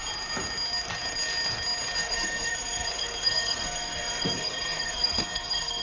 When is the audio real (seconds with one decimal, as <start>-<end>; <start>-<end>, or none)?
0.0-2.0